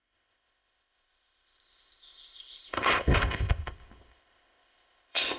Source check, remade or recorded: remade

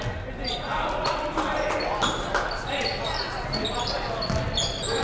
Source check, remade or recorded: recorded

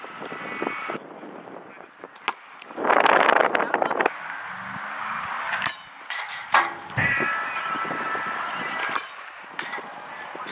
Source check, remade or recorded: recorded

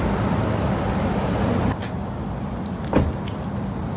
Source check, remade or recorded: recorded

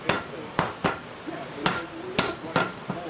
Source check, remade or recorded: recorded